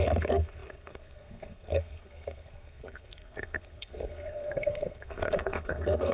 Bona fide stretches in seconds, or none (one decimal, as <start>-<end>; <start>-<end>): none